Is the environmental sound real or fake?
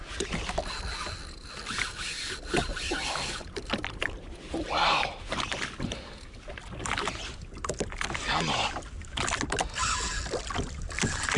real